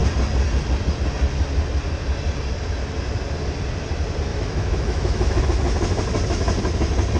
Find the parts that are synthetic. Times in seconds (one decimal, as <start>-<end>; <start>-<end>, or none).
4.3-5.4